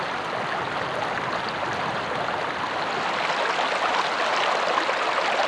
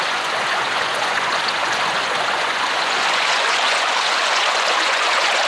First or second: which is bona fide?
first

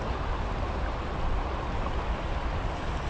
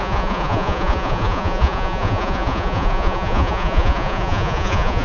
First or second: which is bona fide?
first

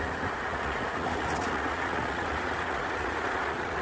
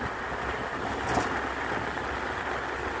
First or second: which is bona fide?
second